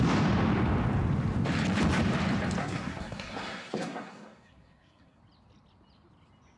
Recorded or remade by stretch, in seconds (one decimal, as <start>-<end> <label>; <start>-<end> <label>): 0.0-2.6 recorded; 2.6-5.2 remade; 5.2-6.6 recorded